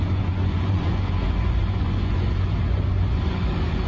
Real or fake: fake